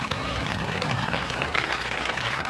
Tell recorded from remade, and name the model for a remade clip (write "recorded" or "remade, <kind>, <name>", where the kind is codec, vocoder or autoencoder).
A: remade, codec, SNAC